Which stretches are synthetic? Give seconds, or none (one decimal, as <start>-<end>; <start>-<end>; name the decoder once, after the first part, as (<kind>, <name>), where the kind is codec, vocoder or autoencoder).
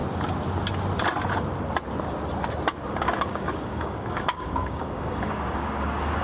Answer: 2.9-6.2 (codec, DAC)